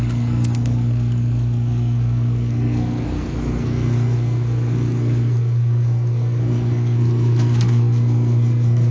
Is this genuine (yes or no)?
no